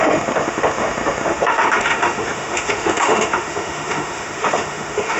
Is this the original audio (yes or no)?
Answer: no